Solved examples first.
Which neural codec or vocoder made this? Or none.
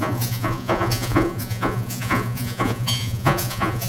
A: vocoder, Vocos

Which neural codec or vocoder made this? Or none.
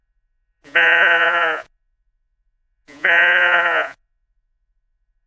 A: vocoder, Vocos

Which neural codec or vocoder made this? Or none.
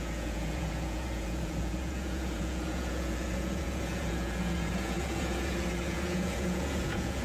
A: vocoder, Vocos